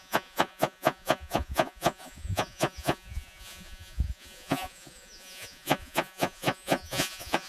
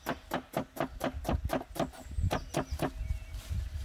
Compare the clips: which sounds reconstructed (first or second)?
first